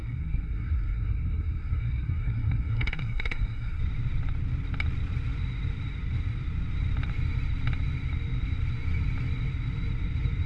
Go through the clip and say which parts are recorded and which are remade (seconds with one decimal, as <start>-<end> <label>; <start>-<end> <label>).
0.0-3.8 remade; 3.8-10.5 recorded